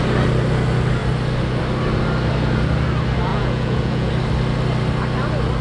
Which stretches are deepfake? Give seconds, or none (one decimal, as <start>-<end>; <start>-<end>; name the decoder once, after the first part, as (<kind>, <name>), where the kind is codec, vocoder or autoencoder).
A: 3.3-4.1 (vocoder, Vocos)